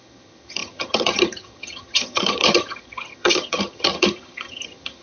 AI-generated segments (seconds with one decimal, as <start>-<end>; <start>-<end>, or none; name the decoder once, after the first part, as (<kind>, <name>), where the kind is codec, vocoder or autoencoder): 0.0-5.0 (vocoder, HiFi-GAN)